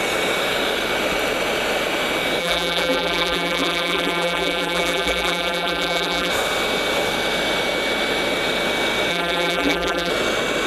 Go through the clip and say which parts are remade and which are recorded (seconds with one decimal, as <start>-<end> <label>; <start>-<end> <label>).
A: 0.0-2.4 recorded; 2.4-6.3 remade; 6.3-9.1 recorded; 9.1-10.1 remade; 10.1-10.7 recorded